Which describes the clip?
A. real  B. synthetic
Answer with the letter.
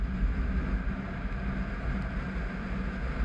A